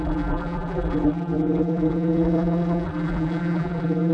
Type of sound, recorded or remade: remade